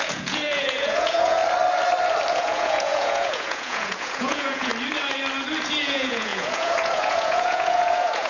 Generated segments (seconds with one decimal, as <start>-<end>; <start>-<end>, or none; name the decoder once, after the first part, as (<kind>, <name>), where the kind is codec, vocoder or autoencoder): 0.0-1.4 (vocoder, Vocos); 2.3-4.7; 5.8-8.3